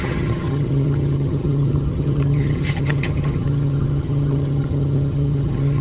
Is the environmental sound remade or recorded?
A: remade